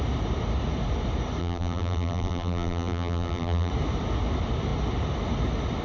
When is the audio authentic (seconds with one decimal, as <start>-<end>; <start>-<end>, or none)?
0.0-1.4; 3.7-5.8